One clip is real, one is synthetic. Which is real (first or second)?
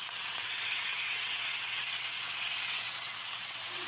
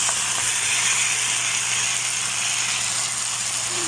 second